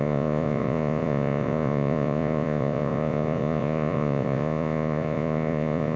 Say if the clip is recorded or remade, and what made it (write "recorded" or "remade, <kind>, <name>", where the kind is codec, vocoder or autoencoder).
remade, vocoder, Vocos